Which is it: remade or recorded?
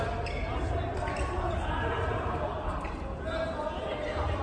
recorded